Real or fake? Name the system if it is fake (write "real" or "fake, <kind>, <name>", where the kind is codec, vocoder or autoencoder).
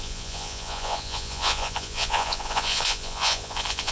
fake, vocoder, Vocos